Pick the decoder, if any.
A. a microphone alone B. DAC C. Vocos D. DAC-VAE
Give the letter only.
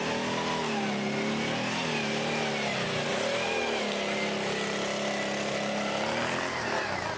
A